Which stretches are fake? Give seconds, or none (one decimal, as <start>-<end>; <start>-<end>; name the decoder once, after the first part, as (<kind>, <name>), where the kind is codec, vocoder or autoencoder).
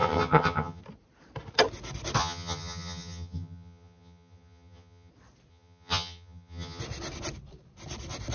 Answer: 0.0-0.8 (vocoder, HiFi-GAN); 2.2-5.1; 5.5-6.8